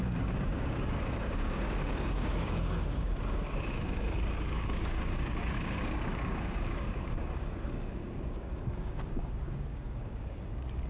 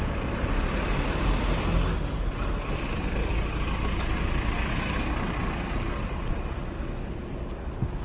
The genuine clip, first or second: second